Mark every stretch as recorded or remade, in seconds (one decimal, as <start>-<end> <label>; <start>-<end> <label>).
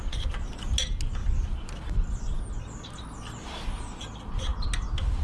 0.0-5.2 recorded